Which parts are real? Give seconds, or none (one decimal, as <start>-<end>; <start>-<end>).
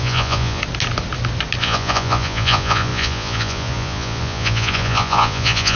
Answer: 0.6-1.6